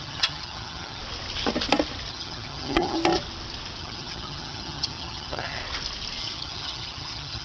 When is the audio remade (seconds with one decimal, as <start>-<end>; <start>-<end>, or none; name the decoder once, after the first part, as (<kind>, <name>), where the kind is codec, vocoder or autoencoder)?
0.0-1.0 (vocoder, HiFi-GAN); 2.1-3.0; 3.8-5.6; 6.2-7.4